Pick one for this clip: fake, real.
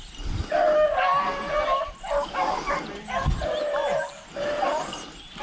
real